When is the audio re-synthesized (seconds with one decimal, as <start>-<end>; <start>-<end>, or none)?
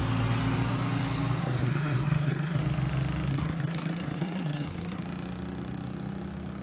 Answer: 1.4-2.6; 3.3-5.0